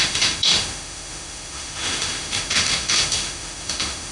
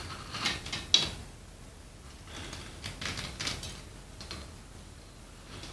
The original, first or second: second